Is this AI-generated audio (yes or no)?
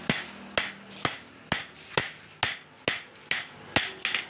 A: no